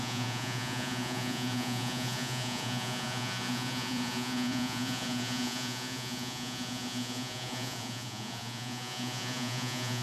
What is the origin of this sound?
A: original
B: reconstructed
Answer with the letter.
B